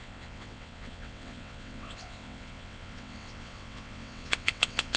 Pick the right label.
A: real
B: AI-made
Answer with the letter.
B